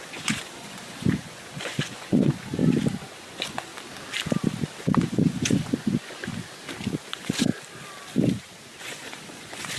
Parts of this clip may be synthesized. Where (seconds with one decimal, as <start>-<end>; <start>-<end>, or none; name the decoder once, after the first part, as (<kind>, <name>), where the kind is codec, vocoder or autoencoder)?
0.0-2.6 (vocoder, Vocos); 3.2-3.7; 4.8-6.3; 7.1-7.5; 8.8-9.8